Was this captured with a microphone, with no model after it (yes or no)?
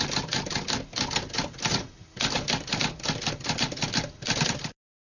yes